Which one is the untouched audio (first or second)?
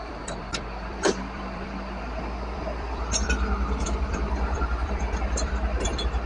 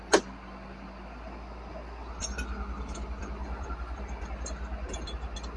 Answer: second